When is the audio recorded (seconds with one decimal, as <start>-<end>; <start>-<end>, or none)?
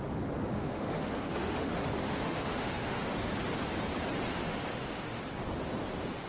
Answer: 0.0-0.5; 3.3-4.3; 5.2-6.3